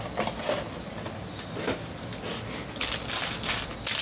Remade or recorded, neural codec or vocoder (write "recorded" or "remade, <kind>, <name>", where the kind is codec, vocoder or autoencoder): recorded